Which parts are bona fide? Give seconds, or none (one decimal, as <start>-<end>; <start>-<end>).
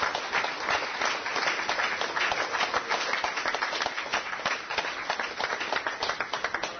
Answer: 0.0-6.8